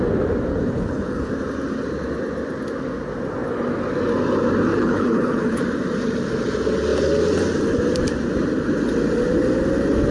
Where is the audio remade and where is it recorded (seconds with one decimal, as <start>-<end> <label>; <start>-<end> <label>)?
0.0-0.5 recorded; 0.5-1.3 remade; 1.3-4.7 recorded; 4.7-5.6 remade; 5.6-10.1 recorded